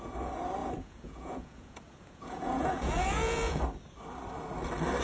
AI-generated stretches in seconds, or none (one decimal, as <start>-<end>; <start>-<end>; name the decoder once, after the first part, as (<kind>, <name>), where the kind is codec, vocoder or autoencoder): 0.6-3.6 (vocoder, Vocos)